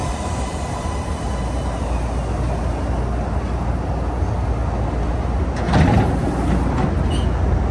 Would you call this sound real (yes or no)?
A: yes